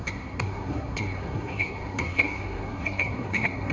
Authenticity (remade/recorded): remade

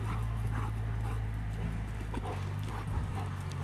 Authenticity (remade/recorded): recorded